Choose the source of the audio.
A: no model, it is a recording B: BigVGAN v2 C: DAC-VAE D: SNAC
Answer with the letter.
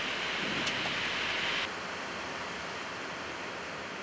A